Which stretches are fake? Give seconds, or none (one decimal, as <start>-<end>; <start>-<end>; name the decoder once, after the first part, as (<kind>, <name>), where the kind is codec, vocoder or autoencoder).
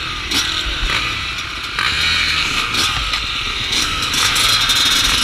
2.2-2.7 (codec, SNAC); 3.5-4.1